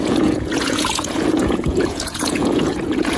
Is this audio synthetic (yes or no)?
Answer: yes